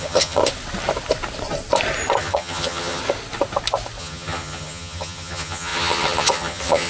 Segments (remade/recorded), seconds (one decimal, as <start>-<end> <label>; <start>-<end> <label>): 0.0-0.4 remade; 0.4-2.2 recorded; 2.2-3.0 remade; 3.0-4.0 recorded; 4.0-6.9 remade